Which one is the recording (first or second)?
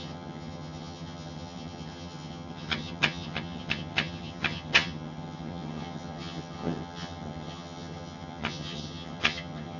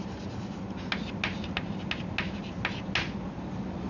second